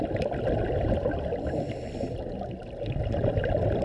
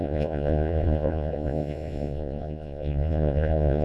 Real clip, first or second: first